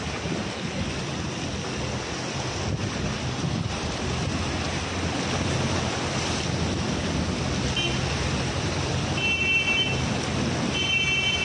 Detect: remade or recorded recorded